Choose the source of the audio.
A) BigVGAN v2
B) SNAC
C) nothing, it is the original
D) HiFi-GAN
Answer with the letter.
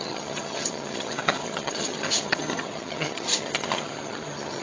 D